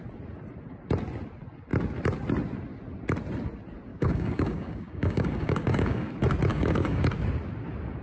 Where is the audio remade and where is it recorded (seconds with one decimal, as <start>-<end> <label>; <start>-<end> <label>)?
0.0-3.9 recorded; 3.9-6.1 remade; 6.1-6.5 recorded; 6.5-7.0 remade; 7.0-8.0 recorded